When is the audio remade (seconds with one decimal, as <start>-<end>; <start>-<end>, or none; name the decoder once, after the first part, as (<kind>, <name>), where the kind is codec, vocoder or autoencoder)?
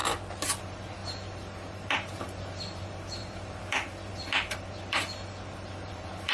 0.6-6.3 (vocoder, BigVGAN v2)